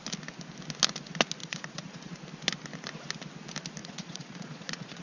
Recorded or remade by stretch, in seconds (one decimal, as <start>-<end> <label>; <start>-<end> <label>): 0.0-1.4 recorded; 1.4-2.1 remade; 2.1-3.8 recorded; 3.8-5.0 remade